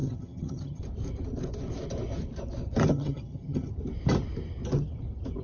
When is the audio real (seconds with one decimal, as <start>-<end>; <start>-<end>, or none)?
0.8-2.9; 3.7-5.4